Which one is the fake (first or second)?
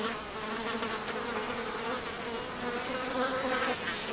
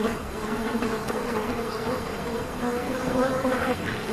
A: second